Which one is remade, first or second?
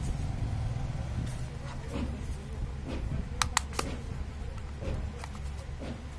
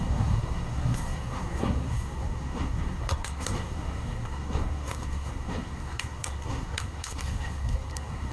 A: second